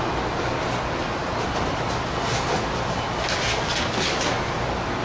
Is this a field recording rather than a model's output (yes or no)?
yes